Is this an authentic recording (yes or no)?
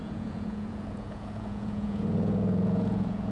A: no